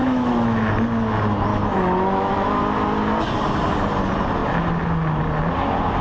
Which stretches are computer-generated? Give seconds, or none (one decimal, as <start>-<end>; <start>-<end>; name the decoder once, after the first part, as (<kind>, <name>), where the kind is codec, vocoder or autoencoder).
0.0-0.7 (autoencoder, DAC-VAE); 1.5-2.6